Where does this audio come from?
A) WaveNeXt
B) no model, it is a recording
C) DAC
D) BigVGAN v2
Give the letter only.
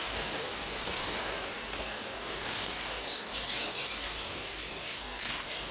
C